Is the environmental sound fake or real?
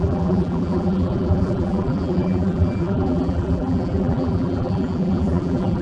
fake